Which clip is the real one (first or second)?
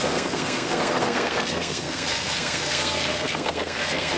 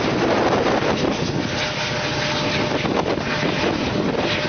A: second